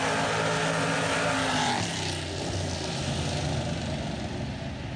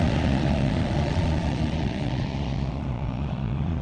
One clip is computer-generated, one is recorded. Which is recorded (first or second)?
first